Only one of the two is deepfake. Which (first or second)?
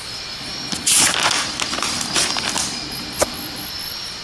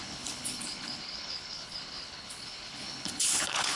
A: second